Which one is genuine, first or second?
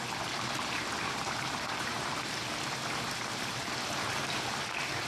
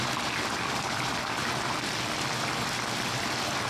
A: second